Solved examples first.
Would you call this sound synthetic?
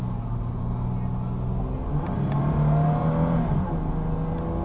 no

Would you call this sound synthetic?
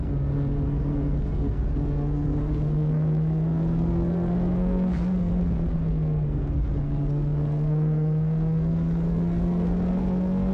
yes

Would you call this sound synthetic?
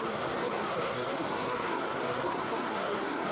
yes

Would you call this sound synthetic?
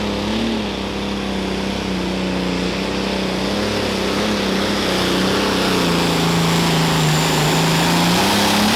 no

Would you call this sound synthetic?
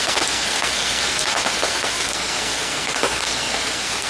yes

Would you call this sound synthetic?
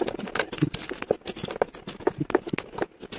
no